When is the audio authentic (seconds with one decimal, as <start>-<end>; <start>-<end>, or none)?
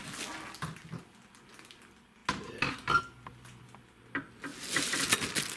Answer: 0.0-5.6